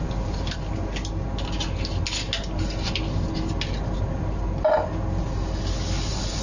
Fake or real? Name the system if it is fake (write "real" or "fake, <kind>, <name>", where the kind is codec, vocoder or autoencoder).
real